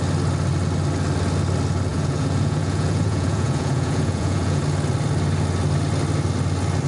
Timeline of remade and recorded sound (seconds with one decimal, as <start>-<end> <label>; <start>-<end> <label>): 0.0-1.9 recorded; 1.9-4.6 remade; 4.6-6.9 recorded